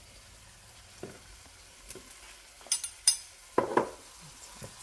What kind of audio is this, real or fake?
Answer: real